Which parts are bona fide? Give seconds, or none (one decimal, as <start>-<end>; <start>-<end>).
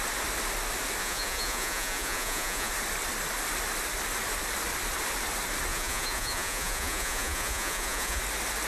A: 0.0-1.0; 2.7-5.7; 8.2-8.7